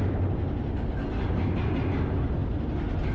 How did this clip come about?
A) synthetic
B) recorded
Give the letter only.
B